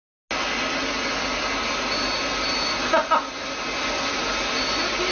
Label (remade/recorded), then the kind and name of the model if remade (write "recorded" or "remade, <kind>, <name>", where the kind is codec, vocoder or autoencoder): recorded